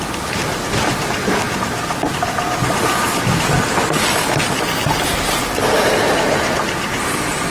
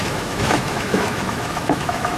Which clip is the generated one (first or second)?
second